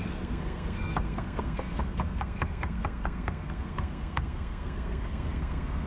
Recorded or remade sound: remade